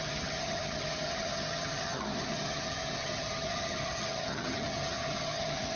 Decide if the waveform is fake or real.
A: fake